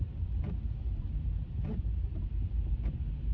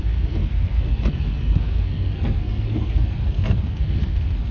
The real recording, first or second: first